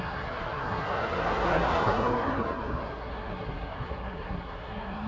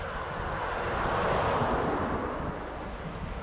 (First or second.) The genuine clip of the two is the second